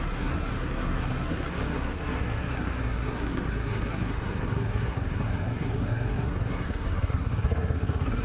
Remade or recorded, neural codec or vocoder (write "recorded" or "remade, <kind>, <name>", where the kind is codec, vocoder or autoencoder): remade, codec, SNAC